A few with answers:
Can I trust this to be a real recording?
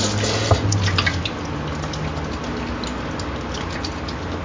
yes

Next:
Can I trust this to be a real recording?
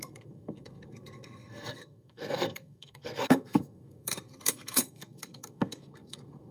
no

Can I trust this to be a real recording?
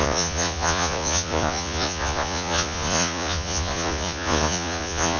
no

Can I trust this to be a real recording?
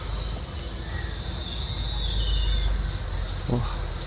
yes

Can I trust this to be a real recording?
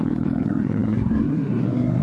no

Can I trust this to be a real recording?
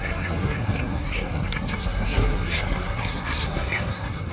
no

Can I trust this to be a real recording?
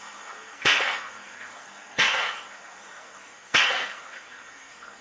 no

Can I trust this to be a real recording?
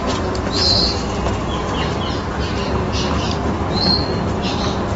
yes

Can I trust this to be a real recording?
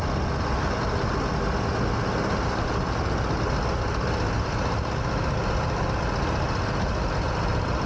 yes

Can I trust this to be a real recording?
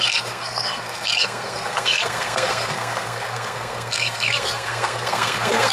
no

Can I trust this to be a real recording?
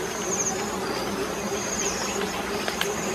yes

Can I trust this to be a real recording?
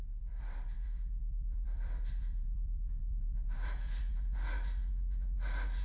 yes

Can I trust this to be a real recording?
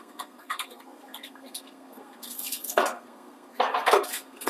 no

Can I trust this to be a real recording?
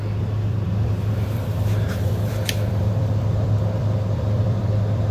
no